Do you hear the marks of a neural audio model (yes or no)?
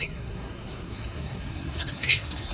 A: yes